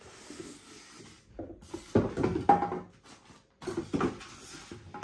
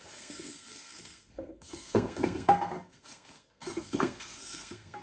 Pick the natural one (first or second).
first